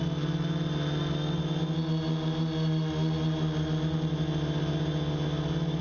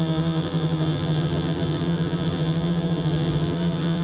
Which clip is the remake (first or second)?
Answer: second